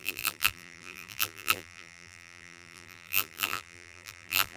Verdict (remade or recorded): remade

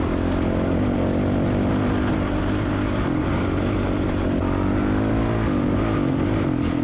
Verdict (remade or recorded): recorded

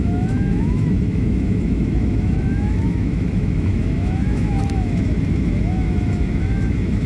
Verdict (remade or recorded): remade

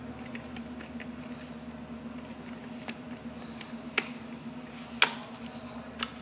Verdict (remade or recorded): recorded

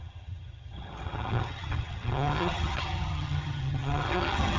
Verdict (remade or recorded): remade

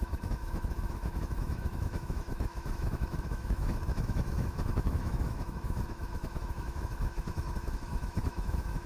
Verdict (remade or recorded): remade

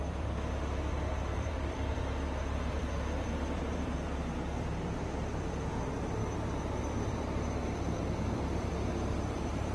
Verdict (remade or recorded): remade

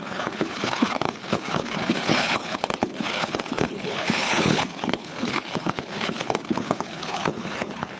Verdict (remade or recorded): remade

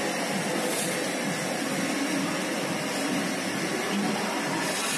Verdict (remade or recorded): recorded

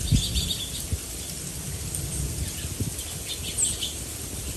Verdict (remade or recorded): recorded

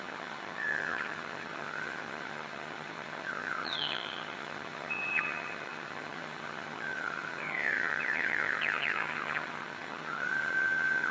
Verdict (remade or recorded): remade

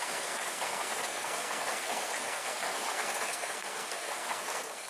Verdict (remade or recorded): remade